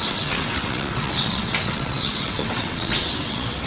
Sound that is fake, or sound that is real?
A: fake